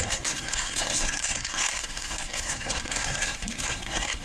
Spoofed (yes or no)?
yes